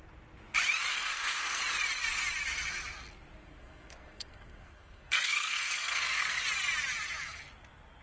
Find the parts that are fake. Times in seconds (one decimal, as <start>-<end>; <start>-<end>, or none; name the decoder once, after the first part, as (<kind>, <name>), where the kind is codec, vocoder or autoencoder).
0.9-1.6 (codec, SNAC); 3.4-6.4